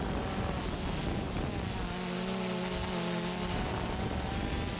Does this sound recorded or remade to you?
recorded